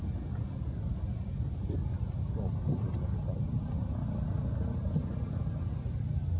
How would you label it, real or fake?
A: real